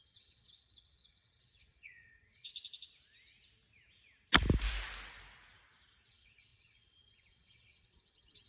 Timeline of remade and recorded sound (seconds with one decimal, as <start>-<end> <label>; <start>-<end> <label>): 0.0-2.5 remade; 2.5-6.1 recorded; 6.1-8.5 remade